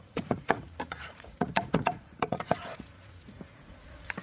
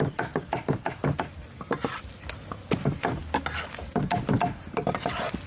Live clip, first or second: second